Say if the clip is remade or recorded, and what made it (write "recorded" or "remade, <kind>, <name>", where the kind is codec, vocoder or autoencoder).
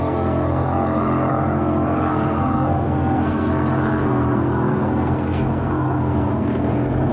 remade, codec, SNAC